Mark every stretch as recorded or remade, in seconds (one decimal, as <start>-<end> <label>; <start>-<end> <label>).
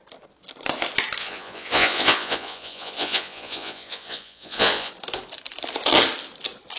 0.0-1.2 recorded; 1.2-4.9 remade; 4.9-6.8 recorded